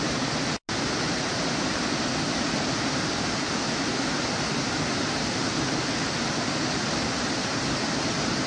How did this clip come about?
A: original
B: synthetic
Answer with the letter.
A